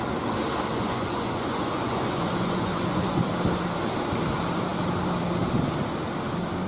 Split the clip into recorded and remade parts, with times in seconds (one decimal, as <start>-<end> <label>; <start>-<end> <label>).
0.0-0.7 recorded; 0.7-3.3 remade; 3.3-6.7 recorded